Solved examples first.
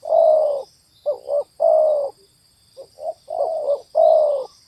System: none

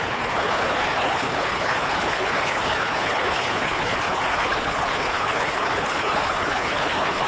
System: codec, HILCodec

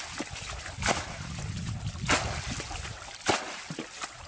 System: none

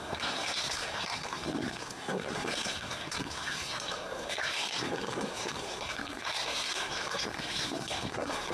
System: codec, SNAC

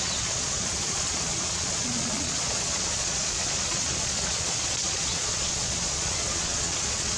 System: vocoder, Vocos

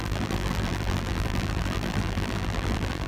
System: vocoder, BigVGAN v2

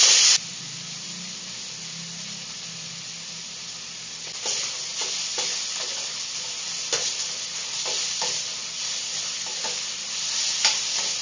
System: none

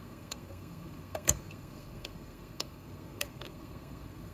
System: codec, SNAC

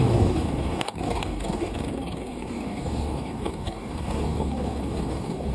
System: codec, DAC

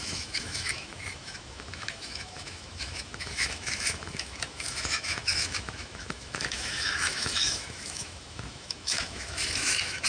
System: autoencoder, DAC-VAE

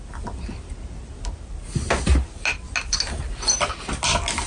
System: none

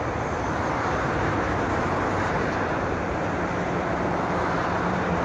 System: vocoder, BigVGAN v2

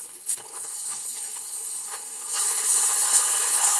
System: codec, HILCodec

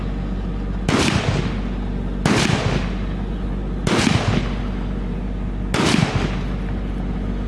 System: none